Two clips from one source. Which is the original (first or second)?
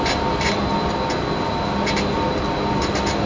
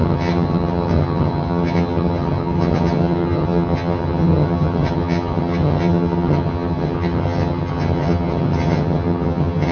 first